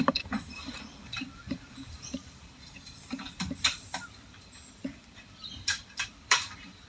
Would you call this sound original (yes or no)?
no